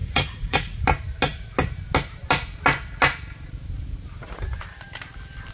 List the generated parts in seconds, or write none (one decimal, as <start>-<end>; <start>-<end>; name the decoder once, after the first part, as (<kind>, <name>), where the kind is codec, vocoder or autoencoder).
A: 0.0-0.8 (vocoder, Vocos)